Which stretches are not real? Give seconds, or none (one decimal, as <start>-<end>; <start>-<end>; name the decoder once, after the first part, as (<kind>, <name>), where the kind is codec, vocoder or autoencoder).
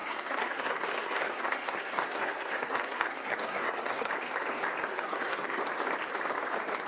0.0-4.1 (codec, SNAC); 4.9-5.6